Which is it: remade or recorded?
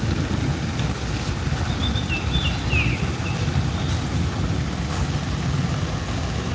recorded